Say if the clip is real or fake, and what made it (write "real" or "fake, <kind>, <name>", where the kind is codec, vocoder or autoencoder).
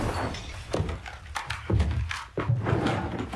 real